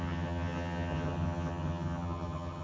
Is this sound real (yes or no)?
no